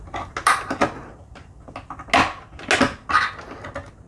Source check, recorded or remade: recorded